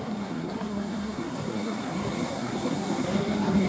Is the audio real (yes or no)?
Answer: no